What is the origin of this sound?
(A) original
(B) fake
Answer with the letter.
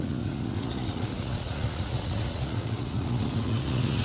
B